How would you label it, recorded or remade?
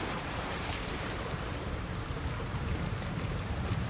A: remade